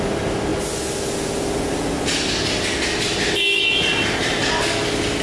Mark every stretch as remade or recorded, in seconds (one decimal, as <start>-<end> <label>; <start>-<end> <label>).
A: 0.0-5.2 recorded